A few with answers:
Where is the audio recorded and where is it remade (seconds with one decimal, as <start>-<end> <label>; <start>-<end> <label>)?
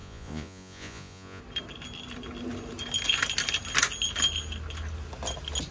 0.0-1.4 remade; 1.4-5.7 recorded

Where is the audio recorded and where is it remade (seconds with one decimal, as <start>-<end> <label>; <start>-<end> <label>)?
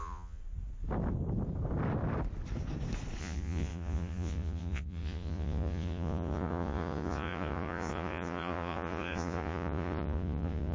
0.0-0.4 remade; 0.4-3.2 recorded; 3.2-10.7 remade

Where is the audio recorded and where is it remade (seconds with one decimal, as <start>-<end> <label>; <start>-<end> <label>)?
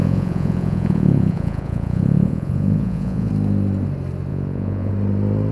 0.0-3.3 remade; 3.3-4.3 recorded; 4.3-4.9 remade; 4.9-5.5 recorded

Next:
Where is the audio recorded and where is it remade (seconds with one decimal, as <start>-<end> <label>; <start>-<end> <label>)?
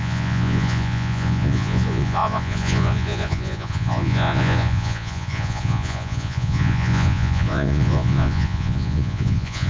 0.0-9.7 remade